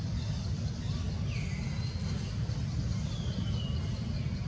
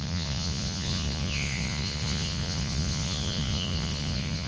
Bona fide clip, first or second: first